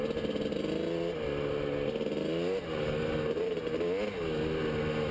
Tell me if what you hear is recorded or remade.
recorded